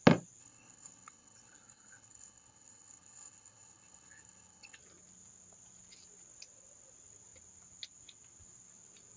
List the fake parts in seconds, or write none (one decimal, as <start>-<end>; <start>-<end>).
0.4-4.8